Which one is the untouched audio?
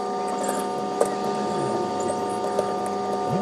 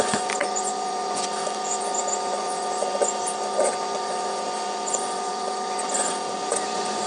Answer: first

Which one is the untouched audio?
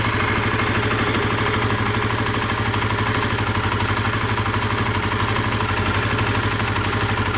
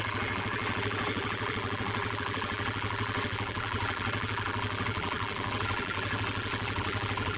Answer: first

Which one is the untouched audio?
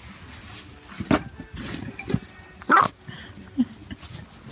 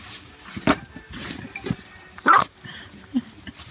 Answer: first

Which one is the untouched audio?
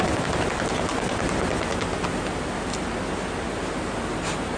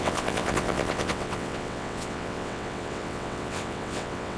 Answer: first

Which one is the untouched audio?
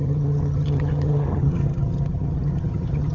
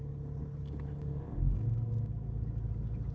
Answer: second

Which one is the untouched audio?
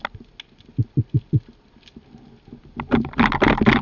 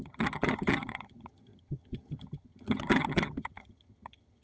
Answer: first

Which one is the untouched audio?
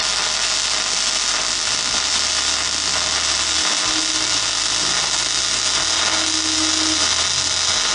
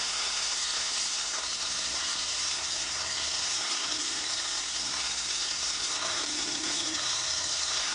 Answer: first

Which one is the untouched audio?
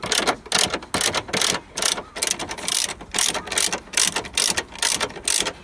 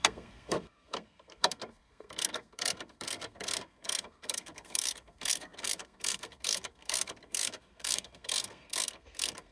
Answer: first